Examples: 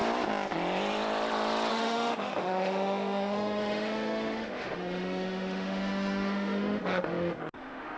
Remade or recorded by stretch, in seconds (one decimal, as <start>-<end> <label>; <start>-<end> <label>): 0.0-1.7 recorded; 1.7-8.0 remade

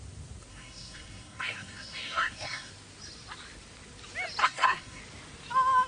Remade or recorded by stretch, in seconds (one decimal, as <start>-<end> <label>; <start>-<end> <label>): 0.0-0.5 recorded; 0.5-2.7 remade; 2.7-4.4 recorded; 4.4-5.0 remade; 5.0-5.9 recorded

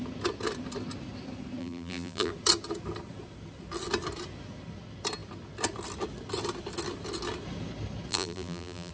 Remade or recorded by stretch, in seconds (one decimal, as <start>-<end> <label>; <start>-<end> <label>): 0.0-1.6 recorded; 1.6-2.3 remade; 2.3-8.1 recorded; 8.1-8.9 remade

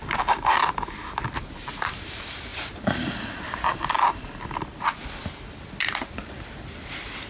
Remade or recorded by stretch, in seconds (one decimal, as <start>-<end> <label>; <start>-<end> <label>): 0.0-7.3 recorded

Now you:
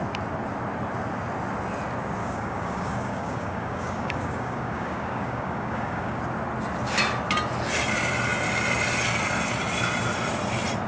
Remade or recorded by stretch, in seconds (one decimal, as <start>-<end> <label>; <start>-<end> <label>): 0.0-2.2 recorded; 2.2-6.2 remade; 6.2-10.9 recorded

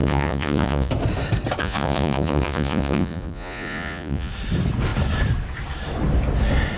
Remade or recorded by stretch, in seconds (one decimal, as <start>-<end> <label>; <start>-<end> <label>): 0.0-0.9 remade; 0.9-1.6 recorded; 1.6-4.3 remade; 4.3-6.8 recorded